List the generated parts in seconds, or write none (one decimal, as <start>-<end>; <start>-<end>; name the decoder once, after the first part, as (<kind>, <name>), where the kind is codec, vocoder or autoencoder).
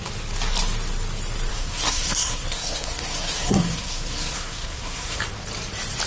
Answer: 1.5-5.2 (codec, SNAC)